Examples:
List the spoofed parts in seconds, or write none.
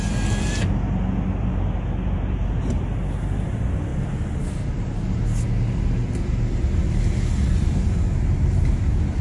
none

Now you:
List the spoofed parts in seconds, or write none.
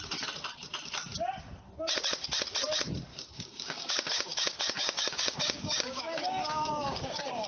3.1-7.5 (codec, DAC)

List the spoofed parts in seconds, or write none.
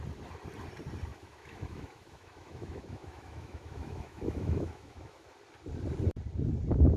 1.1-5.3 (autoencoder, DAC-VAE)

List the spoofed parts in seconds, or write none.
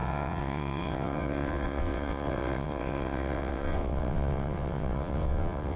0.0-5.8 (vocoder, WaveNeXt)